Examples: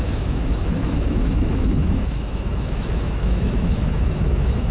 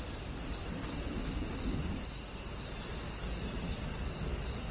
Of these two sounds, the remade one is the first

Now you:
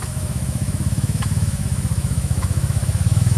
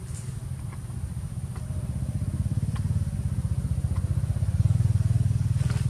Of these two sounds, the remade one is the first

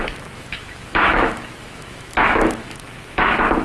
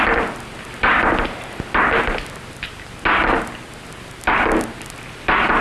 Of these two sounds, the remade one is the first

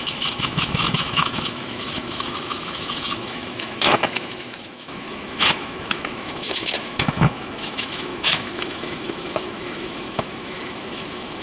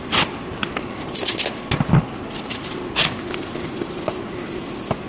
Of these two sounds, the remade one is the first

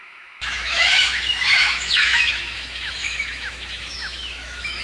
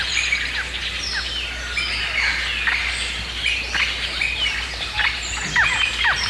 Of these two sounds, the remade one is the first